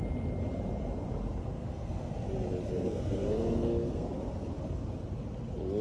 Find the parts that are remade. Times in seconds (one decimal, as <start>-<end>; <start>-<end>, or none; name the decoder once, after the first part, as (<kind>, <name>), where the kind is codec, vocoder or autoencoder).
1.4-2.1 (codec, SNAC); 2.7-4.1